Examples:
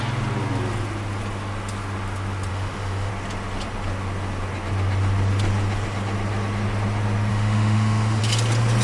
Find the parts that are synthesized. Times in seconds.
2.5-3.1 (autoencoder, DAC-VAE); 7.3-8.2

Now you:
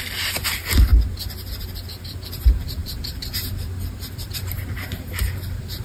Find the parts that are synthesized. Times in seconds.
0.0-0.9 (vocoder, BigVGAN v2); 1.5-5.8

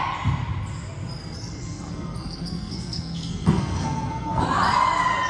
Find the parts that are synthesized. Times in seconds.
1.2-4.4 (codec, SNAC)

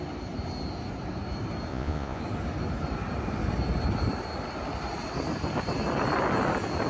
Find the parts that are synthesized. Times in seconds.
1.7-2.2 (vocoder, Vocos)

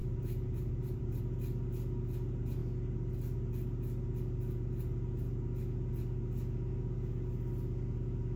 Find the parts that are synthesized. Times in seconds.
0.0-1.2 (vocoder, BigVGAN v2)